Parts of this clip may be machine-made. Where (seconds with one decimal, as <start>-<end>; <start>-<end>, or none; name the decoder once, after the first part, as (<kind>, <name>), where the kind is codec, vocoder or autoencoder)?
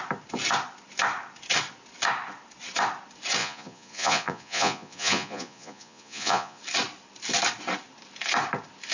3.4-6.6 (vocoder, Vocos)